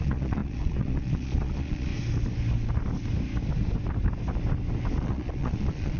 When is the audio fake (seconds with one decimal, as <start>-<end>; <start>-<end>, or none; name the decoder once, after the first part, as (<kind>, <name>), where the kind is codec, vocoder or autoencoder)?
0.0-1.9 (vocoder, Vocos); 5.0-6.0